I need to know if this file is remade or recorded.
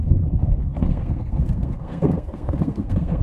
remade